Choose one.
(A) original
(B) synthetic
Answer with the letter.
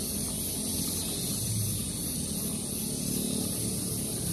A